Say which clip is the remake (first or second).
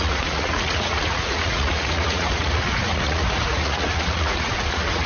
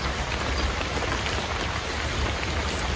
first